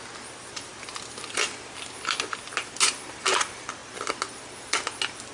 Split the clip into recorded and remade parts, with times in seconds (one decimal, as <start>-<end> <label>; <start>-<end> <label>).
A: 0.0-5.3 recorded